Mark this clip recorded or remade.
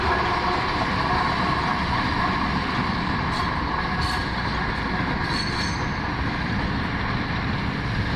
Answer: recorded